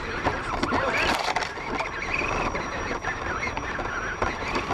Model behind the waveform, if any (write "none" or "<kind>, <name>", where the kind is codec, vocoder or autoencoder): vocoder, BigVGAN v2